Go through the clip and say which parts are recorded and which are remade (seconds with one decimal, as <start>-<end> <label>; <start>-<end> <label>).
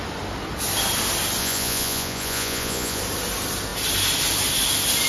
0.0-1.4 recorded; 1.4-3.0 remade; 3.0-5.1 recorded